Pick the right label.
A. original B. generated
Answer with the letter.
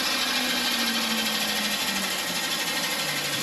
A